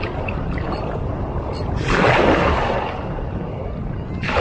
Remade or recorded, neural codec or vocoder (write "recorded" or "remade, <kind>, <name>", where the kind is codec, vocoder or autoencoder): recorded